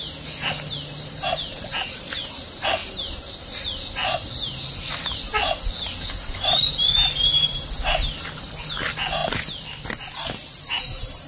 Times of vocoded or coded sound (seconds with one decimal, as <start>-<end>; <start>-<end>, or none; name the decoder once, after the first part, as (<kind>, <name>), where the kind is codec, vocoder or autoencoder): none